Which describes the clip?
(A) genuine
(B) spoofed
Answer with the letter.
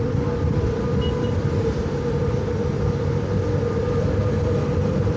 A